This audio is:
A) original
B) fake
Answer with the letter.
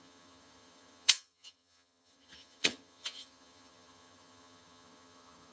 B